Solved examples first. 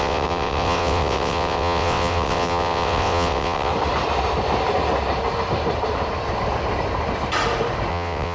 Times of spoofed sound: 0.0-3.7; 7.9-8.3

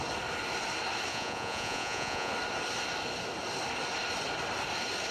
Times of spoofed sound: 1.1-2.3

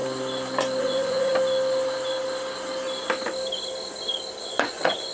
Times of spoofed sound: 0.8-1.3; 4.4-5.1

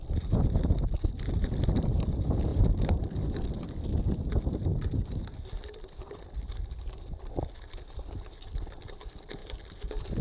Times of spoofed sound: 0.0-2.5; 3.0-9.4

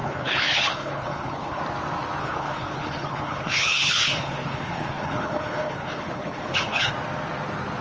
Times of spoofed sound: 0.0-1.6; 2.2-6.9

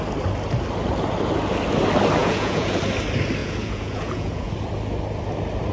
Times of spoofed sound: 2.2-2.8; 3.4-4.5